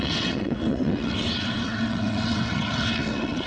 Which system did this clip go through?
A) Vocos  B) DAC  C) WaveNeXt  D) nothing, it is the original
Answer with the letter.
C